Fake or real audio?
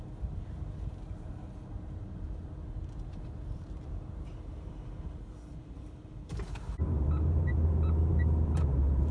fake